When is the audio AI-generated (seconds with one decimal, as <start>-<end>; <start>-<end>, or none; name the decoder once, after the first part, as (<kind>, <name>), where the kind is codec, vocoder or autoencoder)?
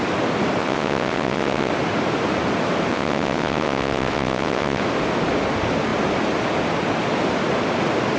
0.6-1.7 (vocoder, WaveNeXt); 2.9-4.8